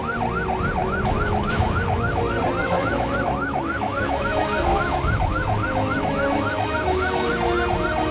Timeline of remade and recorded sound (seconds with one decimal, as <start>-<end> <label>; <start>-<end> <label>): 0.0-0.8 recorded; 0.8-2.2 remade; 2.2-2.6 recorded; 2.6-7.3 remade; 7.3-8.1 recorded